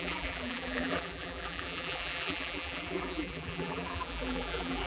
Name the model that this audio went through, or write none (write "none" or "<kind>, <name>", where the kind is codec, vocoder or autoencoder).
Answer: vocoder, BigVGAN v2